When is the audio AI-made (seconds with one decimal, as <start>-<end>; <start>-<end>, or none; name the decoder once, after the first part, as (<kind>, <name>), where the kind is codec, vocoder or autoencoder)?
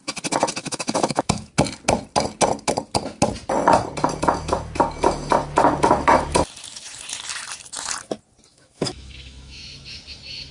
0.6-1.5 (autoencoder, DAC-VAE); 8.5-9.6